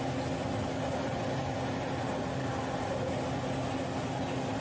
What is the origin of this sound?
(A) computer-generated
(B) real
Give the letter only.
B